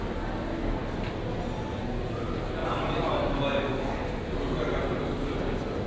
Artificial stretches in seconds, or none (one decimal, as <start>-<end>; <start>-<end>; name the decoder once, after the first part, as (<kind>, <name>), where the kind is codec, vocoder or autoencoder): none